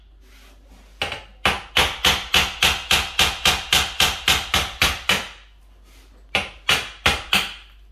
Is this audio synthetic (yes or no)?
no